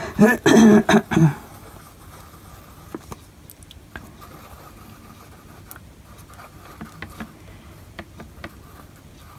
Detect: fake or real real